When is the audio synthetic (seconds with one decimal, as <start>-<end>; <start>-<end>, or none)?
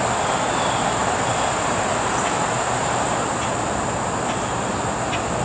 1.0-4.2